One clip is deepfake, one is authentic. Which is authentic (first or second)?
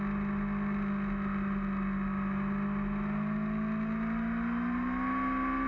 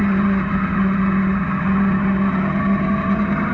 first